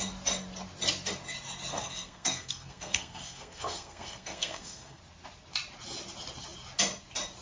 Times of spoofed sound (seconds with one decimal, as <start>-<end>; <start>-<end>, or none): 1.7-5.0